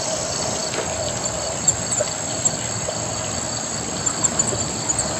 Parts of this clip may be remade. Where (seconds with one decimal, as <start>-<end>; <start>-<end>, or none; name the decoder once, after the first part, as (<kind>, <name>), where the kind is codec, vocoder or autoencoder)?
0.0-5.2 (vocoder, BigVGAN v2)